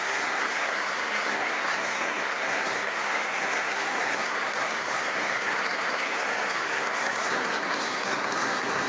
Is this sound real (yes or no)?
no